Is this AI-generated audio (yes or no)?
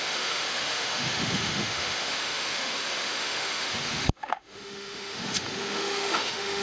yes